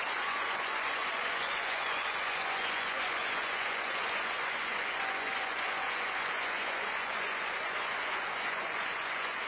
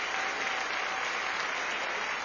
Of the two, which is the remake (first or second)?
first